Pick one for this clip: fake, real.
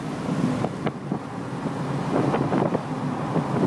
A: real